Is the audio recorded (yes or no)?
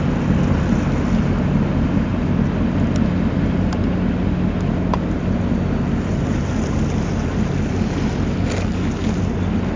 yes